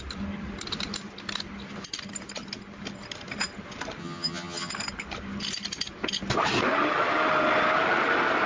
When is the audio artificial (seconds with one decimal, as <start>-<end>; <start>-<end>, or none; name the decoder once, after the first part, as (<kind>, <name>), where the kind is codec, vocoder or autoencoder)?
4.0-4.7 (vocoder, HiFi-GAN)